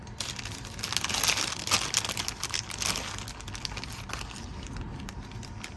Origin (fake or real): real